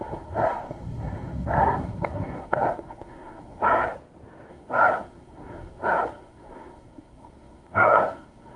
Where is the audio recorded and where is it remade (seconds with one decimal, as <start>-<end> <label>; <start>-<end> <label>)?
0.0-3.9 remade; 3.9-4.5 recorded; 4.5-8.6 remade

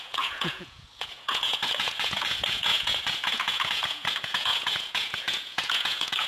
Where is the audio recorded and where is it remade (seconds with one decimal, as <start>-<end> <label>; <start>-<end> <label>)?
0.0-6.3 remade

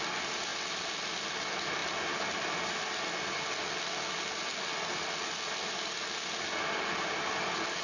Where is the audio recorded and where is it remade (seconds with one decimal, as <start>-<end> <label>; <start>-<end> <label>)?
0.0-7.8 recorded

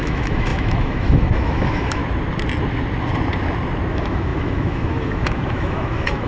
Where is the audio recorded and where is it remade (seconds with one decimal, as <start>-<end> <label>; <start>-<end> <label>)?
0.0-2.0 remade; 2.0-3.9 recorded; 3.9-6.3 remade